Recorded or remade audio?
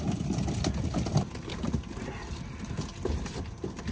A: recorded